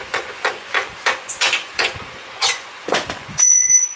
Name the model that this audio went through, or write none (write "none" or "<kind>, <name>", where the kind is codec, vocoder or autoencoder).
vocoder, Vocos